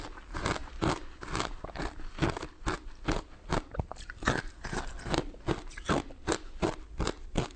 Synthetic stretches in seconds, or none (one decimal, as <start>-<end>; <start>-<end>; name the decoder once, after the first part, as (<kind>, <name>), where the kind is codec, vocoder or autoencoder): none